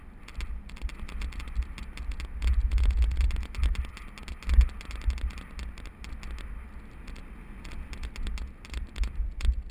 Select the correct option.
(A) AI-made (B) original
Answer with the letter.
B